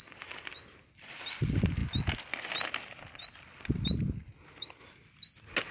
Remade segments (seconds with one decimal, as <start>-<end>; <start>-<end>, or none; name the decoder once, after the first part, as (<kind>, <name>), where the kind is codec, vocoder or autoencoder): none

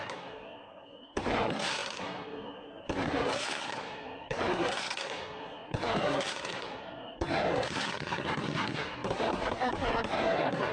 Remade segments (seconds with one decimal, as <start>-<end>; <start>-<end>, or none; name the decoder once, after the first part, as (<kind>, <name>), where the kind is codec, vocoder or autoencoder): 0.0-10.7 (codec, SNAC)

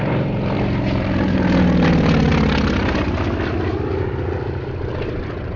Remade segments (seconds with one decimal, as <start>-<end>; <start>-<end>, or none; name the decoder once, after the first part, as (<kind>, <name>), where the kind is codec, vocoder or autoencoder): 0.0-2.3 (vocoder, BigVGAN v2); 4.9-5.6

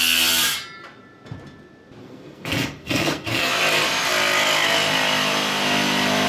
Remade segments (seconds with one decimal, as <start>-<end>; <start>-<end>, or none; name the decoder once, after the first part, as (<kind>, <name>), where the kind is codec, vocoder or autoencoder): 2.0-3.5 (codec, SNAC)

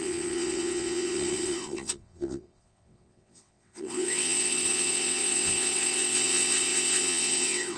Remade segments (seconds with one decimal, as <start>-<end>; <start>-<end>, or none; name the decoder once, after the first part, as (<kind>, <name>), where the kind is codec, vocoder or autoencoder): 0.0-7.8 (vocoder, WaveNeXt)

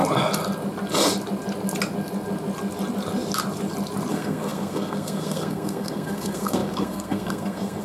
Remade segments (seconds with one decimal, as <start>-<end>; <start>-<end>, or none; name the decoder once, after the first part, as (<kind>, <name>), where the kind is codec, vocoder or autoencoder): 4.1-7.8 (codec, SNAC)

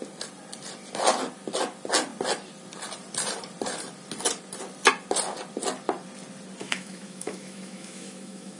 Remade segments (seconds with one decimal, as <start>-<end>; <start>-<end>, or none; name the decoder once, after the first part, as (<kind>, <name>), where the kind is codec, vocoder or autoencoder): 6.6-8.6 (autoencoder, DAC-VAE)